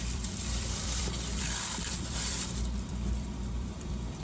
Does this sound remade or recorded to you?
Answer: remade